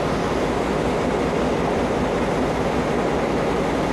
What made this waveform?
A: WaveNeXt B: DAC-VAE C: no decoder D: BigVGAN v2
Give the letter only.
C